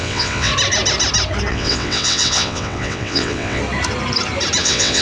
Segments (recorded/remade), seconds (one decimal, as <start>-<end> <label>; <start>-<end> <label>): 0.0-0.5 remade; 0.5-1.5 recorded; 1.5-3.6 remade; 3.6-4.6 recorded; 4.6-5.0 remade